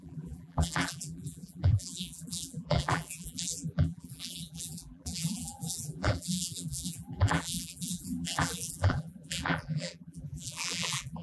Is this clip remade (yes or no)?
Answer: yes